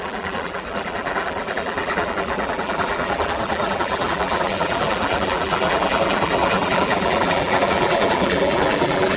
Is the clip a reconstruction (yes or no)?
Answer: yes